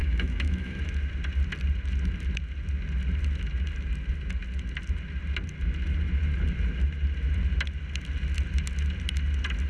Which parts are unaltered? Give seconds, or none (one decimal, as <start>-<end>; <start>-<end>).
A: 0.8-9.7